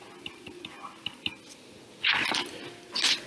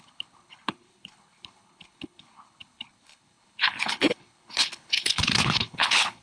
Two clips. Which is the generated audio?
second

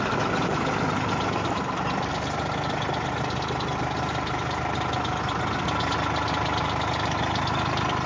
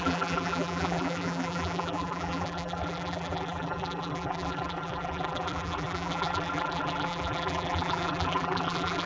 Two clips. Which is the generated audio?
second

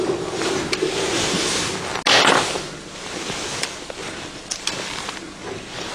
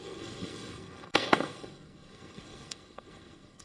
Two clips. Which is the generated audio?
second